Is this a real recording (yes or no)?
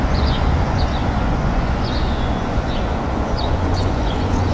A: no